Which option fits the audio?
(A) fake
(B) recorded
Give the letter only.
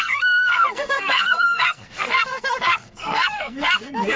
A